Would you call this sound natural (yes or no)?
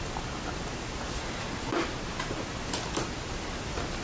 yes